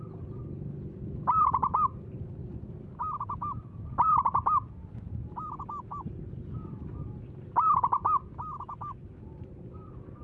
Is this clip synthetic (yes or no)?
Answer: no